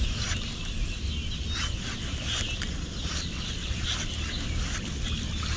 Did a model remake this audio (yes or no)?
no